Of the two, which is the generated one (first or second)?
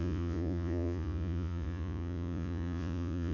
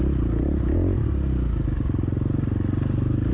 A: first